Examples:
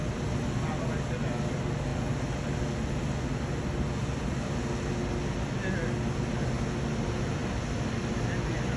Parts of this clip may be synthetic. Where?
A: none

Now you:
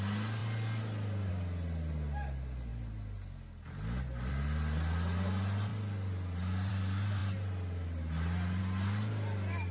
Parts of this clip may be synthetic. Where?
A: none

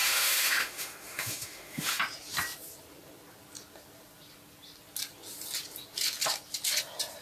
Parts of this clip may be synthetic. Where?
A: 0.0-2.0 (autoencoder, DAC-VAE)

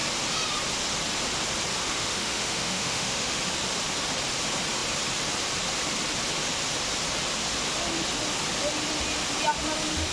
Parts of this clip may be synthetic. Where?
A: 1.8-3.4 (autoencoder, DAC-VAE)

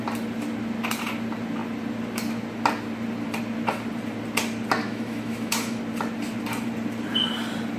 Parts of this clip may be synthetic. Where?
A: 4.8-5.8 (autoencoder, DAC-VAE)